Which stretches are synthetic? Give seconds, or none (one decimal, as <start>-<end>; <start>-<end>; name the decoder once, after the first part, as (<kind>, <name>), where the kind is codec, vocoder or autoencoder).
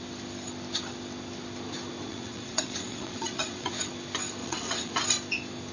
2.1-3.7 (vocoder, WaveNeXt); 4.4-4.9